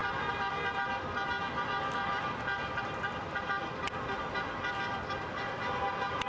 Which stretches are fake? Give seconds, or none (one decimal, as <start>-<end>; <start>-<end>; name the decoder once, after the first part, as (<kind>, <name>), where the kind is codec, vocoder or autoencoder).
2.0-5.8 (vocoder, BigVGAN v2)